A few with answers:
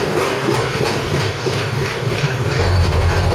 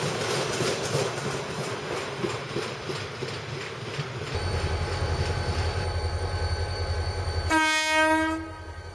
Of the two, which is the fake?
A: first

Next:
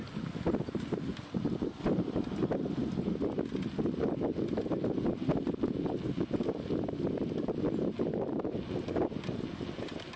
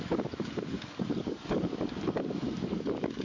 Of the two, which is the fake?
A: second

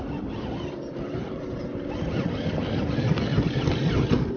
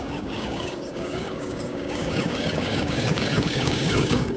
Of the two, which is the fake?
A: second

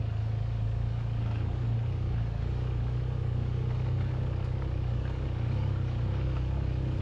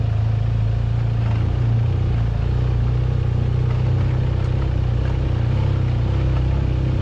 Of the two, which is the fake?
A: first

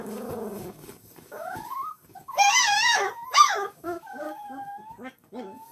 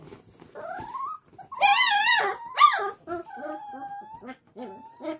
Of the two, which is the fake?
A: first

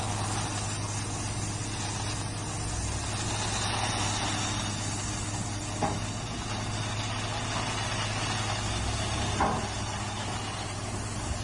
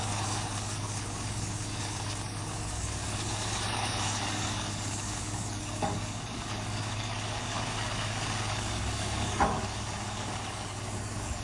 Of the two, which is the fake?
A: second